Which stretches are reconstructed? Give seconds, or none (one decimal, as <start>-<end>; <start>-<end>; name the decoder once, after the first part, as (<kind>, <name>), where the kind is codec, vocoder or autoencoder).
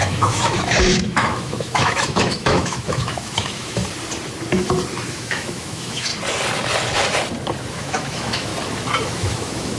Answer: 0.0-3.8 (autoencoder, DAC-VAE); 5.1-6.1; 7.7-8.5; 9.1-9.8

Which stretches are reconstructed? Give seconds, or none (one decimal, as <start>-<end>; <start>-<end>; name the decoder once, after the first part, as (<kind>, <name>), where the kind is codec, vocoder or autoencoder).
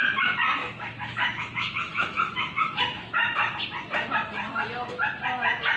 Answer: 0.6-3.5 (autoencoder, DAC-VAE)